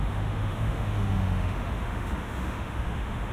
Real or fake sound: fake